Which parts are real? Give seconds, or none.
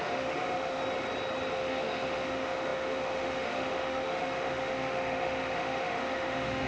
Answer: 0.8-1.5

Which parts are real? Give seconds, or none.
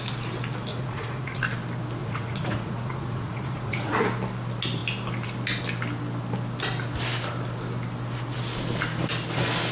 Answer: 0.0-0.7; 1.4-2.0; 3.9-9.7